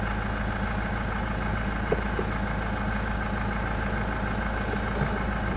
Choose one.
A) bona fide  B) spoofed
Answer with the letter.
A